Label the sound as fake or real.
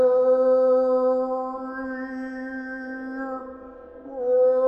real